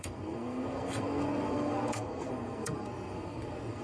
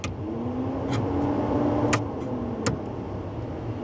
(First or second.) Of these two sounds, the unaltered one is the second